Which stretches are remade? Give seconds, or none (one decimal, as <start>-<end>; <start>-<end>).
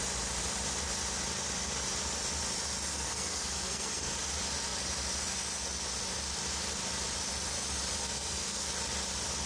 2.9-4.2; 8.0-8.7